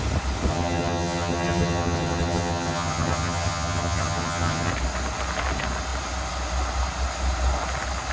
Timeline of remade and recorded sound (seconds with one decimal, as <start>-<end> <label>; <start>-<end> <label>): 0.0-0.5 recorded; 0.5-4.7 remade; 4.7-8.1 recorded